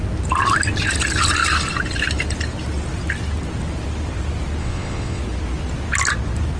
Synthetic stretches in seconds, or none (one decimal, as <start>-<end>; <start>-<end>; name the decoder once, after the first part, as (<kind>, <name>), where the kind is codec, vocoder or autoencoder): 4.6-5.2 (vocoder, WaveNeXt)